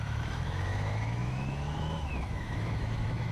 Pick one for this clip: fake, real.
fake